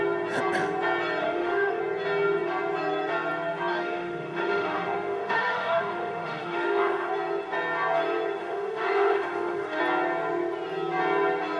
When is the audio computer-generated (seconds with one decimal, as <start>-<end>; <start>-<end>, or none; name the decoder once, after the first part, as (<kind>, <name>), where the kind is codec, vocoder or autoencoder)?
1.2-1.8 (autoencoder, DAC-VAE); 3.7-7.1; 8.4-9.8

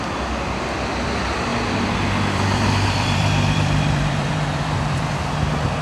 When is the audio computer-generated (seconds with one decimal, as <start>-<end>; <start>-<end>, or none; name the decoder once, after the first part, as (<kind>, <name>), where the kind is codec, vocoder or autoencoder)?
1.5-5.0 (vocoder, BigVGAN v2)

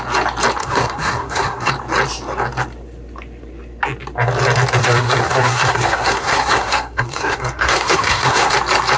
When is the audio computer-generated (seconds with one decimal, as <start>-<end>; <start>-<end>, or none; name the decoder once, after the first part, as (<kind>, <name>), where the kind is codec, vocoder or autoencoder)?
0.6-1.7 (codec, SNAC); 4.8-8.5